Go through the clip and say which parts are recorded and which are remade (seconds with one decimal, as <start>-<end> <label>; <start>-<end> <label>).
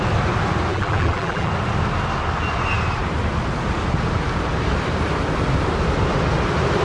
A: 0.0-0.7 recorded; 0.7-1.5 remade; 1.5-6.8 recorded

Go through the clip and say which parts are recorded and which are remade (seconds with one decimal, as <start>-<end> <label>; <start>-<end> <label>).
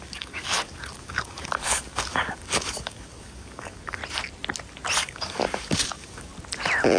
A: 0.0-4.0 remade; 4.0-5.0 recorded; 5.0-6.3 remade; 6.3-7.0 recorded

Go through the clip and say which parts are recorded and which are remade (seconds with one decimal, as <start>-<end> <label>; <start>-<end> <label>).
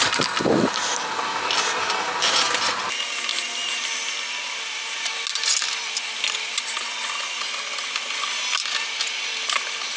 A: 0.0-10.0 recorded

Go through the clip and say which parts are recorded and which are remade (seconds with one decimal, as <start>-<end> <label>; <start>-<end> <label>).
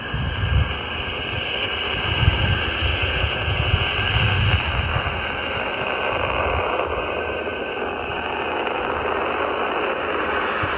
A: 0.0-3.0 recorded; 3.0-3.9 remade; 3.9-10.8 recorded